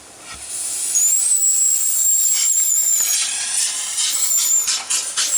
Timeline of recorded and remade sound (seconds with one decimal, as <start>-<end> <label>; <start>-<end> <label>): 0.0-2.4 recorded; 2.4-4.5 remade; 4.5-5.4 recorded